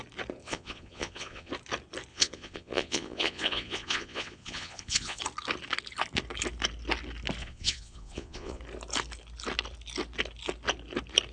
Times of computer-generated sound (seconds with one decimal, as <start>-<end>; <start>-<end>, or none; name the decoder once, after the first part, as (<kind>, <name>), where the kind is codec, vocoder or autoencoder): 0.4-1.5 (vocoder, Vocos); 2.1-5.2; 7.4-8.6